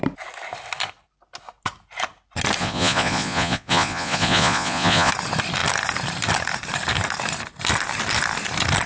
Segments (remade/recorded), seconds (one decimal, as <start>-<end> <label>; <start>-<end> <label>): 0.0-2.6 recorded; 2.6-5.1 remade; 5.1-8.9 recorded